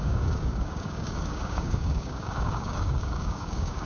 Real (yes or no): no